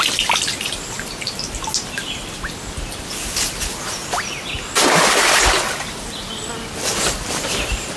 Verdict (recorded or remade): recorded